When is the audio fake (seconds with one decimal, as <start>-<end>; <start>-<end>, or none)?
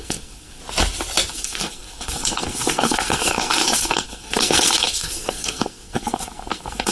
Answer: 0.0-0.6; 1.3-6.9